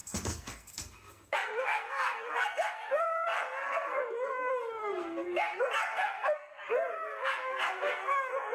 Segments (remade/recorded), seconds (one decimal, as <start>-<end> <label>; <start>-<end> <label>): 0.0-8.5 remade